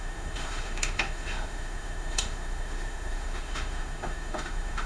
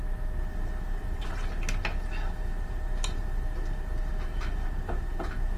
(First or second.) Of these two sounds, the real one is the second